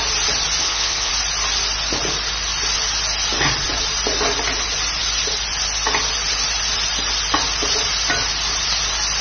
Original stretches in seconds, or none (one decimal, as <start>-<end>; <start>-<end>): 0.0-0.6; 1.1-9.2